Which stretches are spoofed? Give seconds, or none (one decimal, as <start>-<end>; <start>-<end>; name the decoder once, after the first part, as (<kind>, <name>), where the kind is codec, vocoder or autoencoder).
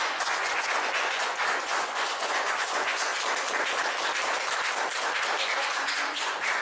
0.0-3.1 (vocoder, Vocos); 5.6-6.6